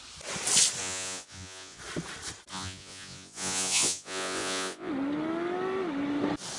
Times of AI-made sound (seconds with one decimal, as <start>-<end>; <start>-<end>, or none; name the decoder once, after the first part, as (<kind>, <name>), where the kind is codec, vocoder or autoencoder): 0.8-1.8 (vocoder, Vocos); 2.5-4.9